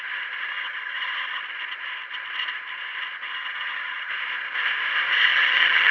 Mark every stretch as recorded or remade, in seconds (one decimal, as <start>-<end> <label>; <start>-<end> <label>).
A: 0.0-0.5 recorded; 0.5-1.4 remade; 1.4-3.3 recorded; 3.3-4.1 remade; 4.1-5.3 recorded; 5.3-5.9 remade